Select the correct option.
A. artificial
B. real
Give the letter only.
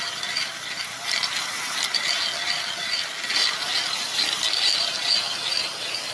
B